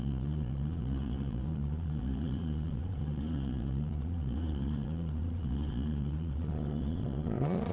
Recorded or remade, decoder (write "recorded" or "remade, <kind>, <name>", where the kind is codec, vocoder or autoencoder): remade, vocoder, Vocos